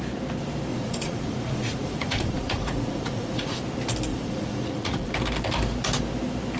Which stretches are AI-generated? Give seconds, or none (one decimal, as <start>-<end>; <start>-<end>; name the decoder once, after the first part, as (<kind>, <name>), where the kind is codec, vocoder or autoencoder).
0.7-3.6 (vocoder, Vocos); 4.1-5.1